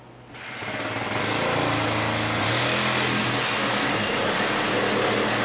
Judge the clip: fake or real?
real